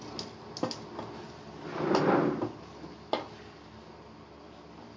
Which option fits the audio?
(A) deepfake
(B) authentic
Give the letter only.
B